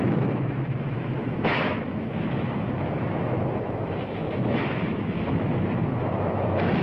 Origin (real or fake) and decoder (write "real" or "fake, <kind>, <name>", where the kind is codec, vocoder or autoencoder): fake, autoencoder, DAC-VAE